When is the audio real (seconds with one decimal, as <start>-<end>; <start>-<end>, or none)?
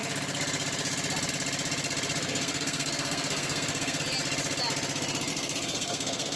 0.0-2.2; 4.0-5.3